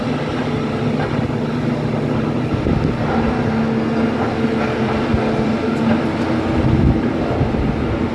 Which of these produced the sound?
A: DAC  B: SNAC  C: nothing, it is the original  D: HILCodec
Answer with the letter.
C